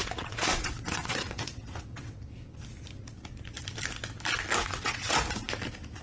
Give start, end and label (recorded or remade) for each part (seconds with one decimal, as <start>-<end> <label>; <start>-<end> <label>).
0.0-2.2 remade; 2.2-4.6 recorded; 4.6-5.2 remade; 5.2-6.0 recorded